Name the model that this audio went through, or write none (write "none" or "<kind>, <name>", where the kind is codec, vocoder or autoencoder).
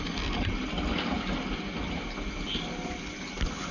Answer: none